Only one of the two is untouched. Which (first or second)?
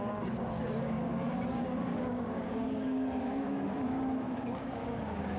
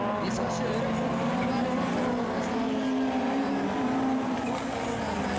second